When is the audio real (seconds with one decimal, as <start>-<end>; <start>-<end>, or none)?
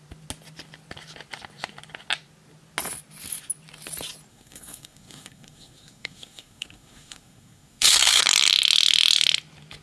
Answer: 0.0-4.3; 8.2-9.8